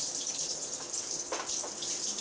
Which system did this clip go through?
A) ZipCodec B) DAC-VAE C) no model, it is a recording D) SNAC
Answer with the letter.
C